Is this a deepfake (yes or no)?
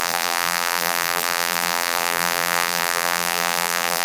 yes